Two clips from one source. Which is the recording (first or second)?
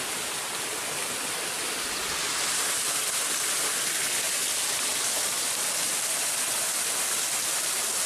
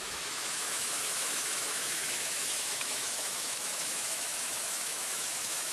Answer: first